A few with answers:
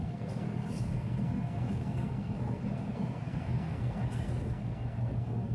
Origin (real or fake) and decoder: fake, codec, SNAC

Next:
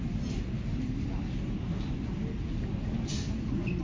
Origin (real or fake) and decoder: real